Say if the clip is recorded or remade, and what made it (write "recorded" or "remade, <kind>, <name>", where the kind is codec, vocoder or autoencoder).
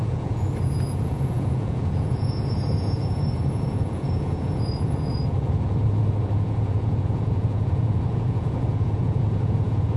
remade, vocoder, Vocos